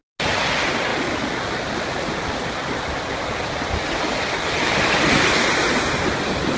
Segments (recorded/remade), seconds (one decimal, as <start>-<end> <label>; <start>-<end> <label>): 0.0-6.6 recorded